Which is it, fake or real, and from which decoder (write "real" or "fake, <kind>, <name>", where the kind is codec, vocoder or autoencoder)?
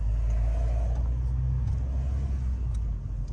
real